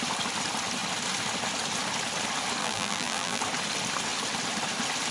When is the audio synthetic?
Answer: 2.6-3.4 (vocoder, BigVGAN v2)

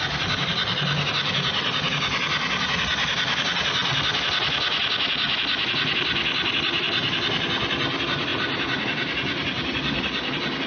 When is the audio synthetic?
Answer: none

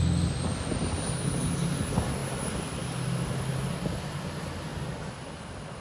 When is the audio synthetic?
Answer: none

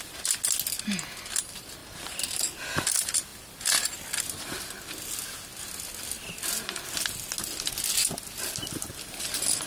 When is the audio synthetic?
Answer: 1.8-2.4 (vocoder, BigVGAN v2)

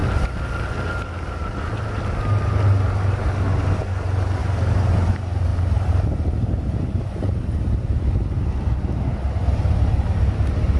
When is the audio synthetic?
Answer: 4.4-5.1 (vocoder, BigVGAN v2); 5.5-7.1

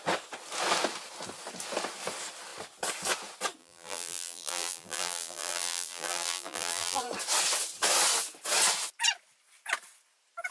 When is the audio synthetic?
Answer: 3.6-7.0 (vocoder, BigVGAN v2)

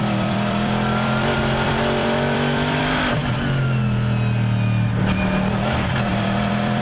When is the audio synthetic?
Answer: 0.0-3.2 (vocoder, BigVGAN v2); 6.2-6.8

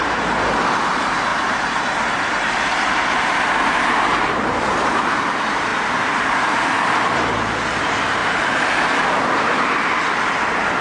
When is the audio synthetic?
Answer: 0.0-5.7 (vocoder, BigVGAN v2); 7.7-8.2; 10.3-10.8